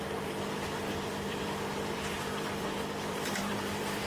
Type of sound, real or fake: fake